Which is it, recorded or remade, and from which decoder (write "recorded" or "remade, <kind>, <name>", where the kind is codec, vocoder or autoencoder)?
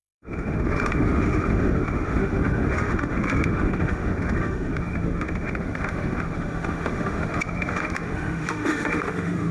remade, autoencoder, DAC-VAE